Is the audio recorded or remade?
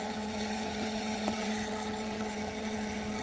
remade